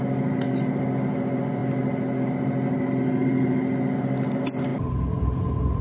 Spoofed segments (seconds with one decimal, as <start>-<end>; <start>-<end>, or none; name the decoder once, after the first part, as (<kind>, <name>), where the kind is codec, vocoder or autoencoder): none

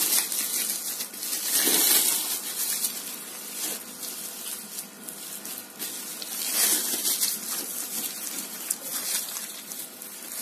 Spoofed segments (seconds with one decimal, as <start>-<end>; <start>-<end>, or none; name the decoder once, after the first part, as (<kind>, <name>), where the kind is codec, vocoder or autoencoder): 8.9-10.4 (vocoder, BigVGAN v2)

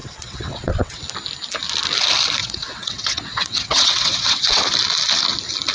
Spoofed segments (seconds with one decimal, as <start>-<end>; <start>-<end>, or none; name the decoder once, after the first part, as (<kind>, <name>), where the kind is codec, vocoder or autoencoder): 0.0-1.0 (vocoder, WaveNeXt); 2.4-4.6

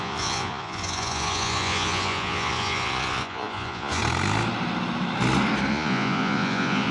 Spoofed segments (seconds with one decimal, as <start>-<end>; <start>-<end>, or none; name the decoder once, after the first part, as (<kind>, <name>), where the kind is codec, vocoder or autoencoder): 0.0-4.0 (vocoder, Vocos); 5.7-6.9

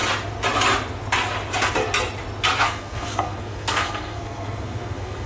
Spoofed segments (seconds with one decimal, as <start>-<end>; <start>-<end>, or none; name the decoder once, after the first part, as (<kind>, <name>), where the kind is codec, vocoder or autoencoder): 2.6-5.3 (codec, SNAC)

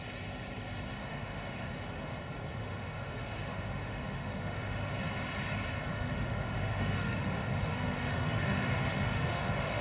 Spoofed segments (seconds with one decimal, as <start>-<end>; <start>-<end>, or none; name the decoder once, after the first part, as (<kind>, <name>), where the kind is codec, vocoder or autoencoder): 1.0-2.2 (autoencoder, DAC-VAE); 2.6-4.9; 5.9-9.8

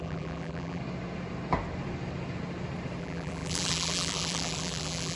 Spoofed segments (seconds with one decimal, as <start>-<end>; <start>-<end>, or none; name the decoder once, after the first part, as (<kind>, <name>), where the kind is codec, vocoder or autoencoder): 0.0-0.8 (vocoder, BigVGAN v2); 3.0-5.2